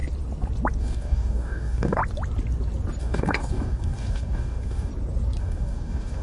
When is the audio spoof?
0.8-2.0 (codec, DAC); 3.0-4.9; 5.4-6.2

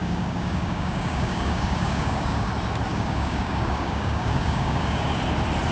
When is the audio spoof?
0.0-2.5 (codec, DAC); 2.9-5.2

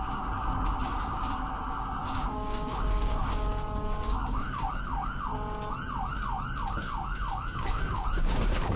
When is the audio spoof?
0.0-5.3 (codec, DAC); 6.7-8.8